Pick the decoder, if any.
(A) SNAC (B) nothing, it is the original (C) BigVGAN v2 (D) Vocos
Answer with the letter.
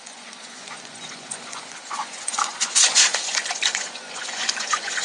D